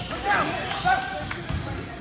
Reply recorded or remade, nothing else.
recorded